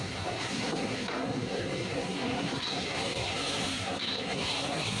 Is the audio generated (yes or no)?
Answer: yes